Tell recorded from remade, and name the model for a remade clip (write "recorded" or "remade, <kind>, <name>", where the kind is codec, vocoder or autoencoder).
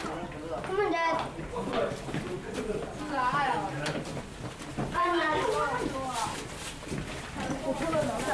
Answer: recorded